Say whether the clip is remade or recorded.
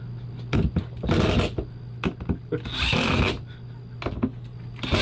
recorded